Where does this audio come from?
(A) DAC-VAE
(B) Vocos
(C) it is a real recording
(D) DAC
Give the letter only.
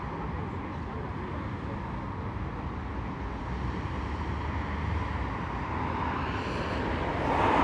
C